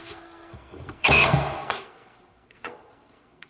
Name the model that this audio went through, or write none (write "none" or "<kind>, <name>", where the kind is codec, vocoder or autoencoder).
codec, SNAC